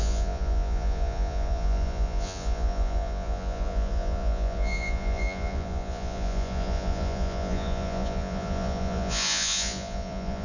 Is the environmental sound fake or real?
fake